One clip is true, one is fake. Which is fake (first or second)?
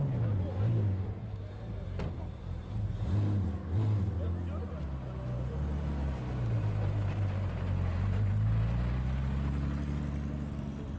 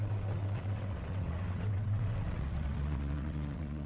second